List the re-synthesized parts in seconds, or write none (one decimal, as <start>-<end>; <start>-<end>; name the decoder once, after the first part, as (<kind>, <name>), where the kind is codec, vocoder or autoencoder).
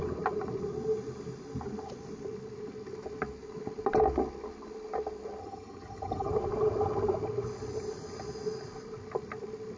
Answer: 5.4-6.3 (vocoder, HiFi-GAN)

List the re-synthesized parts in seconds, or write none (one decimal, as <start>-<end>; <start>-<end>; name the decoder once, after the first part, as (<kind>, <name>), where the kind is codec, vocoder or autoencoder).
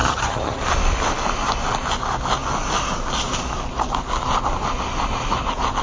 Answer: 0.0-0.6 (vocoder, HiFi-GAN)